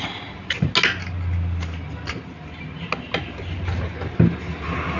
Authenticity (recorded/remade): recorded